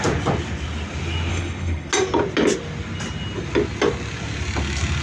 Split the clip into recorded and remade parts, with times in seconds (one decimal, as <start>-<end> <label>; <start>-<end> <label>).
0.0-1.3 recorded; 1.3-1.9 remade; 1.9-5.0 recorded